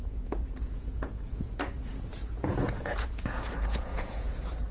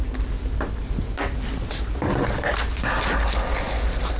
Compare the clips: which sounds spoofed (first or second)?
first